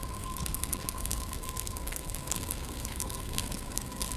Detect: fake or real fake